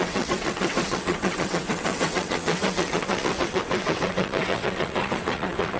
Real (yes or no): no